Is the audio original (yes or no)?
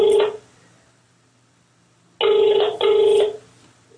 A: yes